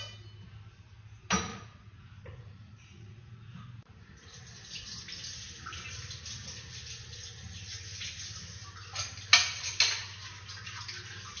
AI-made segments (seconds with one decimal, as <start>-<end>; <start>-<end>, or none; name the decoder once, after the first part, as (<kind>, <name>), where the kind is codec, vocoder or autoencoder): 1.5-4.4 (vocoder, Vocos)